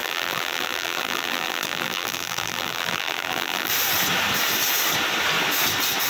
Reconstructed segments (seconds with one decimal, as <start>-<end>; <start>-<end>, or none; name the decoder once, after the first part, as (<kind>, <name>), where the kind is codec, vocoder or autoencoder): 0.0-3.7 (vocoder, BigVGAN v2)